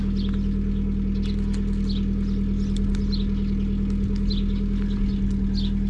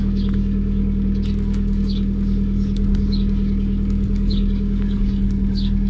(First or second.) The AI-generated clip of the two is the second